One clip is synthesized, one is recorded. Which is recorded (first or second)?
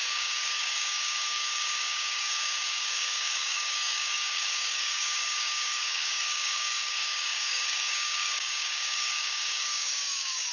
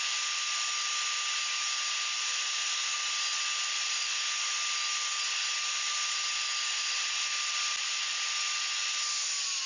second